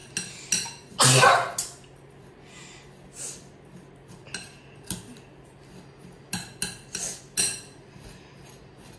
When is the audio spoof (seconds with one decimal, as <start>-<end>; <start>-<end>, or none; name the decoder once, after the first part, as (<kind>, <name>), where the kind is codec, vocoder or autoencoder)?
none